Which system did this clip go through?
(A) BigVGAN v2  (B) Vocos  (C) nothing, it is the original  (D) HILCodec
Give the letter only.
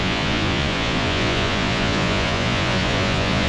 B